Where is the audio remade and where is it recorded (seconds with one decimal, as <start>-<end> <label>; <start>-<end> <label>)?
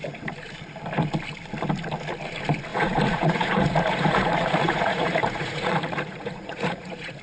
0.0-2.7 recorded; 2.7-7.2 remade